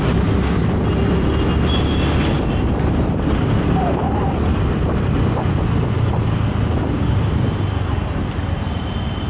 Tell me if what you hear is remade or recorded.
recorded